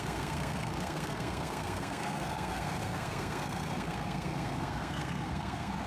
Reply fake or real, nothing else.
fake